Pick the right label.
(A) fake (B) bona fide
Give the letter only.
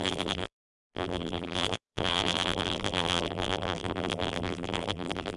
A